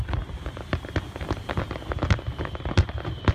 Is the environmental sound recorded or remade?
recorded